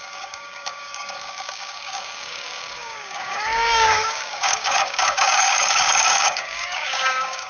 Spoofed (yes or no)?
yes